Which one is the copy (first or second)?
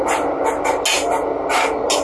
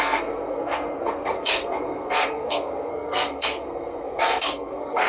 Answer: second